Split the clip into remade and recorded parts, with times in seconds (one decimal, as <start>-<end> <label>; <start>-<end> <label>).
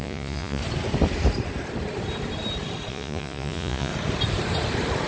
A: 0.0-0.6 remade; 0.6-2.9 recorded; 2.9-3.9 remade; 3.9-5.1 recorded